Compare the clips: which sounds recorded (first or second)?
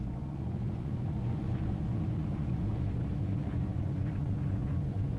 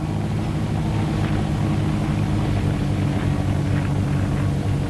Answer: second